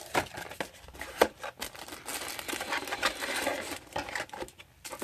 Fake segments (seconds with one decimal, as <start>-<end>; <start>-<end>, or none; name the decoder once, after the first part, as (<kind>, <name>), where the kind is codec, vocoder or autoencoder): 0.0-2.1 (vocoder, BigVGAN v2); 2.7-5.0